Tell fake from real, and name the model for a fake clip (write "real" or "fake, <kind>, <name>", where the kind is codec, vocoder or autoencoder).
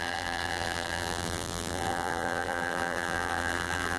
fake, vocoder, BigVGAN v2